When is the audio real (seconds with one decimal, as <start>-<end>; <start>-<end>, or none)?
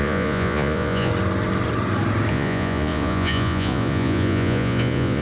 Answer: 1.1-2.3